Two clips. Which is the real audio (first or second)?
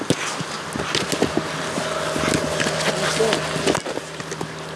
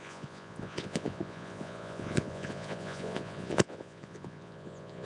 first